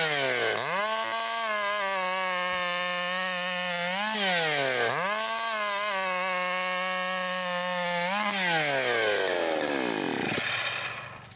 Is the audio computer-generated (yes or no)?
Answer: no